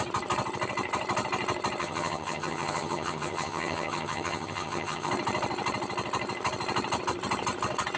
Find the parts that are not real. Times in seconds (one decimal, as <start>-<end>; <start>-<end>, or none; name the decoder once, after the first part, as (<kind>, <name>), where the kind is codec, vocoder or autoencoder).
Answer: 1.8-5.1 (vocoder, HiFi-GAN)